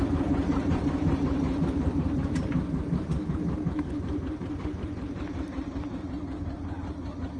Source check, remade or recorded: remade